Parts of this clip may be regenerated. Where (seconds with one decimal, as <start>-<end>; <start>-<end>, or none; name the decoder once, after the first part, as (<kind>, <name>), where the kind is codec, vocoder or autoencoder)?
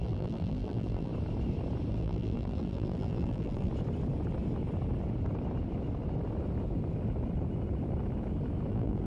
0.0-1.1 (vocoder, BigVGAN v2); 1.9-3.7; 8.7-9.1